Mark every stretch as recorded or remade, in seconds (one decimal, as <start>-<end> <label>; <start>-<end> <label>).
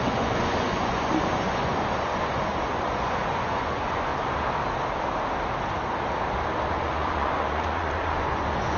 0.0-4.1 remade; 4.1-6.7 recorded; 6.7-8.8 remade